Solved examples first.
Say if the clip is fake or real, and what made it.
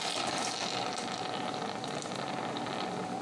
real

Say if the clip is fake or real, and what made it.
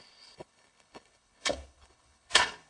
fake, codec, HILCodec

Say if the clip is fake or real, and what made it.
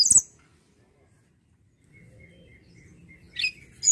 real